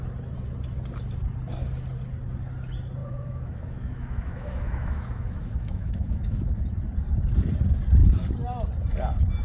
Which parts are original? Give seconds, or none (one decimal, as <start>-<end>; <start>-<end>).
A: 0.0-3.0; 6.6-9.4